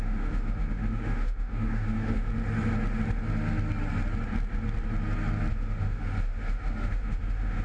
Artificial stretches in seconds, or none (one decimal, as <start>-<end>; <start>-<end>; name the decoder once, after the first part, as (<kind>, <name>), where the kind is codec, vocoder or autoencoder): 0.0-2.3 (autoencoder, DAC-VAE); 5.5-7.6